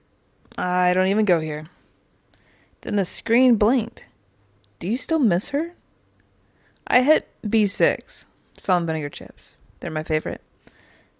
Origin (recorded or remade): recorded